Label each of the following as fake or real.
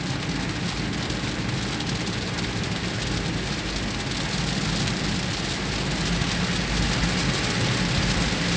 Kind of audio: real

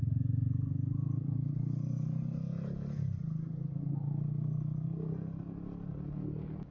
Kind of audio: real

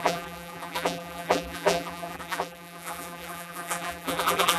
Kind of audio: fake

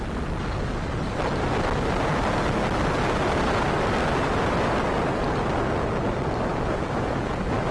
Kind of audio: real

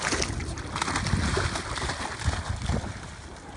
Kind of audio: real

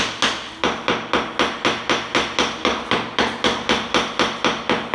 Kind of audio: real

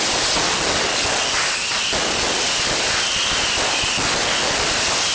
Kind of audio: real